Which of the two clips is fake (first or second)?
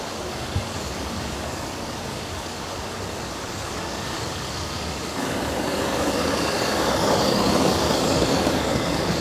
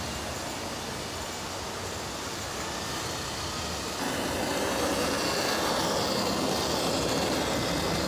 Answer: first